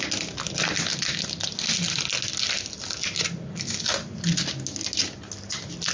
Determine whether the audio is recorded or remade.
recorded